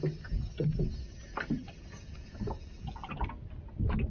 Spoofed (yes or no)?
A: no